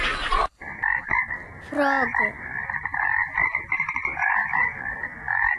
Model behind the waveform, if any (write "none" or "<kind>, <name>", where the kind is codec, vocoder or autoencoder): none